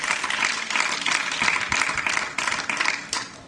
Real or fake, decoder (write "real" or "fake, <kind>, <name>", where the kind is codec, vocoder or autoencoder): real